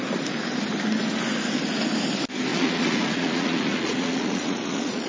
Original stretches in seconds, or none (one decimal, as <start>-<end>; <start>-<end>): 0.0-2.5